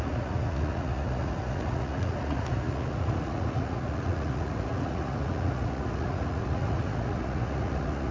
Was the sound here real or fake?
fake